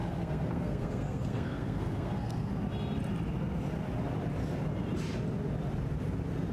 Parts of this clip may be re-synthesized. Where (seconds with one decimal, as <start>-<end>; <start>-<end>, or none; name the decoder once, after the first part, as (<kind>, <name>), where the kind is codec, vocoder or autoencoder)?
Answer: 0.0-2.5 (codec, SNAC)